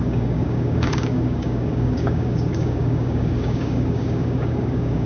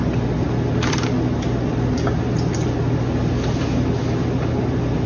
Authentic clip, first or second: second